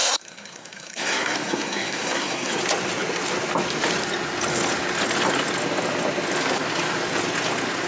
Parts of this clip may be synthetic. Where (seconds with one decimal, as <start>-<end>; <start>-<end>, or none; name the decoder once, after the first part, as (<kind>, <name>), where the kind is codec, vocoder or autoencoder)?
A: 0.0-2.6 (codec, SNAC)